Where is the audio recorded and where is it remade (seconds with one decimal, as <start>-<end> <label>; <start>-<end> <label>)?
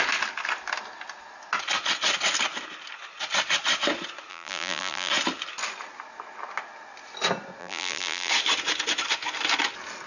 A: 0.0-4.3 recorded; 4.3-5.1 remade; 5.1-7.6 recorded; 7.6-8.3 remade; 8.3-10.1 recorded